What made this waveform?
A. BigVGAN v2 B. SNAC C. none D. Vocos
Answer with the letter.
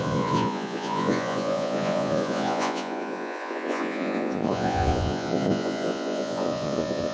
D